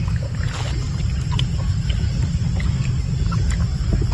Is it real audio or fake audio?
real